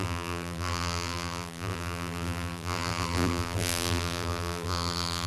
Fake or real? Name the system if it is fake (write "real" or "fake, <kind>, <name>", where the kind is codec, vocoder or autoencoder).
fake, vocoder, BigVGAN v2